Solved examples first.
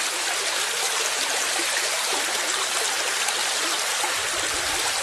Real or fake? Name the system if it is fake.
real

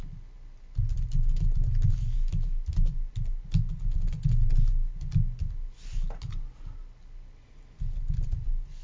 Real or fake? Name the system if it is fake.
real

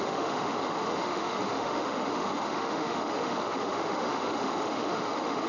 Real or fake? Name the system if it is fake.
fake, autoencoder, DAC-VAE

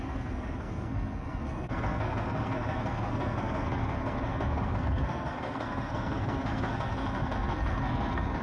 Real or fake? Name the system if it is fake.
fake, codec, SNAC